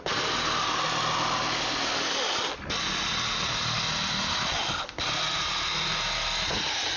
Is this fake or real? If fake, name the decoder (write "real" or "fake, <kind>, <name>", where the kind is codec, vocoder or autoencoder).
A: real